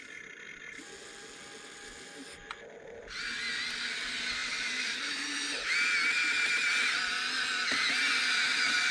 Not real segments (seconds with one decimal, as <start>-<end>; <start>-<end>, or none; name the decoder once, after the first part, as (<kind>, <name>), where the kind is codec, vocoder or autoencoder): 4.4-5.2 (vocoder, BigVGAN v2)